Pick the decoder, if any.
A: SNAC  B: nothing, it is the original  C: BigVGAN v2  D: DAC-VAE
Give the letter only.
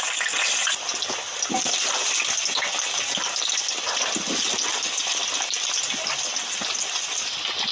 B